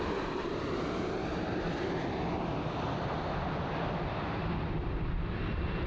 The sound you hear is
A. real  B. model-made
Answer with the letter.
A